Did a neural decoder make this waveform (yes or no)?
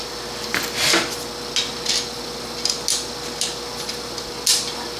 no